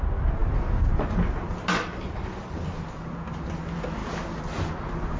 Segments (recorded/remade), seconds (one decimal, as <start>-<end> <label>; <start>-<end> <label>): 0.0-5.2 recorded